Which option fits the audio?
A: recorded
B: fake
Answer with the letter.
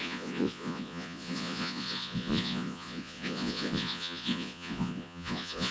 B